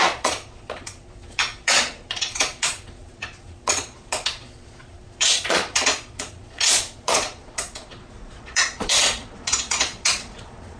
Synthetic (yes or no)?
yes